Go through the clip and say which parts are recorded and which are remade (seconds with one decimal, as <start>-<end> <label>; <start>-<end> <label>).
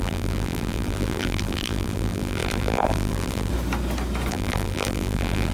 0.0-3.5 remade; 3.5-4.3 recorded; 4.3-5.5 remade